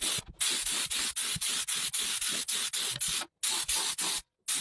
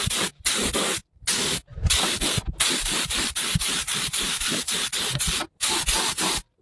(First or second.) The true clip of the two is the first